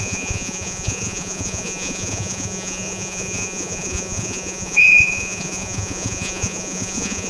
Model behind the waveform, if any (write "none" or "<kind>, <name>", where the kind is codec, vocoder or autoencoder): vocoder, Vocos